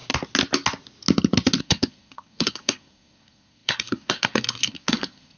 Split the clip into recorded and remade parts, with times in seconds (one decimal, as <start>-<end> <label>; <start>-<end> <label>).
0.0-1.6 recorded; 1.6-5.4 remade